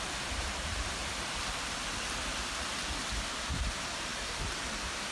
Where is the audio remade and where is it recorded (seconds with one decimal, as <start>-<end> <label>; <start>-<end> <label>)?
0.0-1.0 remade; 1.0-3.1 recorded; 3.1-5.1 remade